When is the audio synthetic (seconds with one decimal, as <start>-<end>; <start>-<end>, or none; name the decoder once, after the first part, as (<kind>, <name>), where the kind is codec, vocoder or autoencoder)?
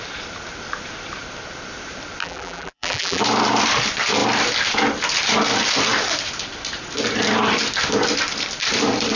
2.2-3.2 (vocoder, BigVGAN v2)